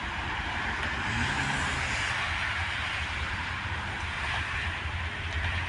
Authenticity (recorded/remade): recorded